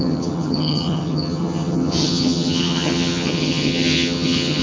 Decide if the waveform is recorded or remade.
remade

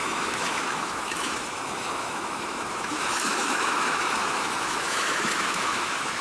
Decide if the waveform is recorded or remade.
remade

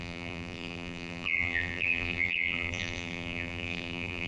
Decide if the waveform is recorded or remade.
remade